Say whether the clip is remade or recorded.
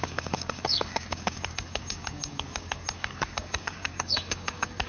remade